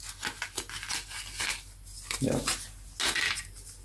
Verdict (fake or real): real